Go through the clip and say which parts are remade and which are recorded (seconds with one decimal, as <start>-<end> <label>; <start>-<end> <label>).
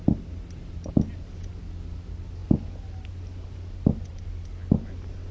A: 0.0-5.3 recorded